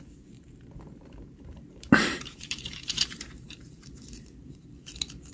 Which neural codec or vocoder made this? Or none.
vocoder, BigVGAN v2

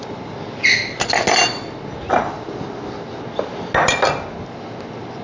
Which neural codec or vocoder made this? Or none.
none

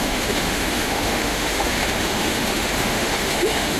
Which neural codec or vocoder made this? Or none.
autoencoder, DAC-VAE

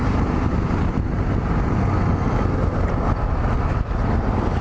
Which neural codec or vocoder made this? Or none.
none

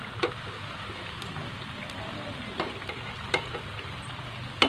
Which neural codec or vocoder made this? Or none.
none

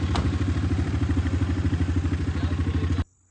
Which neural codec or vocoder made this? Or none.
none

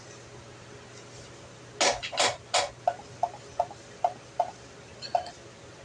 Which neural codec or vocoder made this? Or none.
none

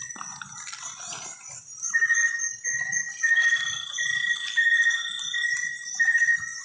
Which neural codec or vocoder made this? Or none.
none